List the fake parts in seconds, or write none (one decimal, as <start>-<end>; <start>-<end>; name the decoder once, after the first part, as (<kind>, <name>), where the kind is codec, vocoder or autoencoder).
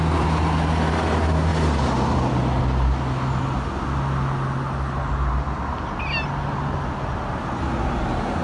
none